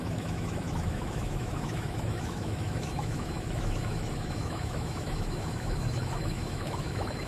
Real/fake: fake